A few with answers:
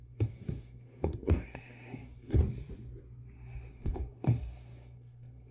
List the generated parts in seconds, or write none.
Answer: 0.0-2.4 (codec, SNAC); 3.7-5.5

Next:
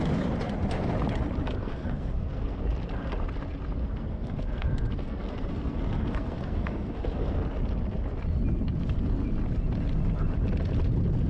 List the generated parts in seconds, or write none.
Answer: 1.6-2.6 (codec, SNAC); 3.8-7.4

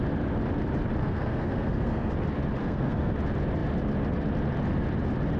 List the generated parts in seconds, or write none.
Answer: 1.0-2.1 (codec, SNAC); 2.6-3.1

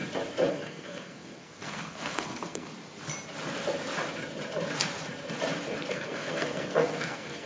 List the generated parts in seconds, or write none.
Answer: 0.5-2.7 (codec, SNAC); 5.9-7.5

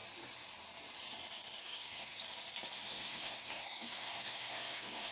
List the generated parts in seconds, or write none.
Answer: 1.6-2.2 (codec, SNAC); 2.9-5.1